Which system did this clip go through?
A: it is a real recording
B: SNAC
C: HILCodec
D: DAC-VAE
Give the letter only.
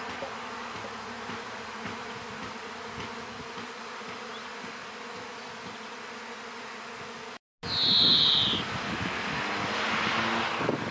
A